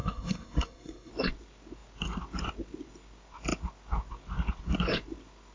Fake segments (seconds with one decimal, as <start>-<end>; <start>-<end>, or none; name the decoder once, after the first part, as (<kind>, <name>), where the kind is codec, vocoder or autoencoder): 0.0-1.1 (codec, SNAC)